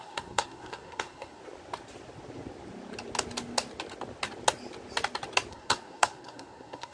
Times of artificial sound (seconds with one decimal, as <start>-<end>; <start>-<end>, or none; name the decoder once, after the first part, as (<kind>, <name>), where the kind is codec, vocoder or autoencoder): 0.0-1.4 (codec, SNAC); 5.5-6.9